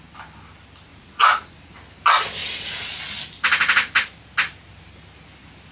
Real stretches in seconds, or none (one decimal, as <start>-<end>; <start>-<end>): 0.0-0.9; 1.7-2.4; 3.0-5.7